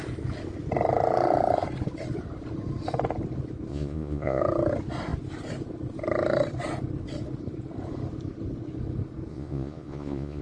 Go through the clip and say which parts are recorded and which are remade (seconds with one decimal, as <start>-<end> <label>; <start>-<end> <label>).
0.0-3.7 recorded; 3.7-4.4 remade; 4.4-9.3 recorded; 9.3-10.4 remade